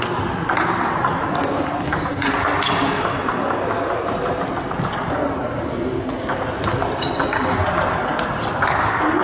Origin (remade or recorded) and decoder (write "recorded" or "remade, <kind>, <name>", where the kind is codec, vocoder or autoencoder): recorded